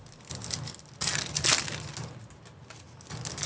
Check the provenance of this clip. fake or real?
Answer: real